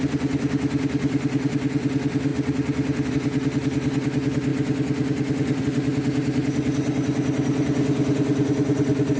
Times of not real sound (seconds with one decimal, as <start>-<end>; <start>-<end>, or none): none

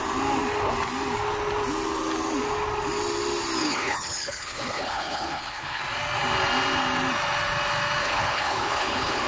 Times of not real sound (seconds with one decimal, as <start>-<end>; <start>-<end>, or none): 3.6-5.8; 8.0-9.3

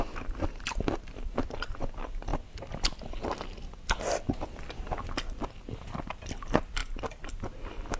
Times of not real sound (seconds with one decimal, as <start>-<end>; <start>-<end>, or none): none

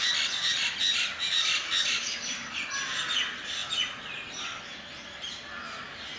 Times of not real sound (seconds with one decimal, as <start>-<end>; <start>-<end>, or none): none

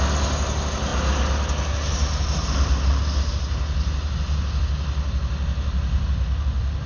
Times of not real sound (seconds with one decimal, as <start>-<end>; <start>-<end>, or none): none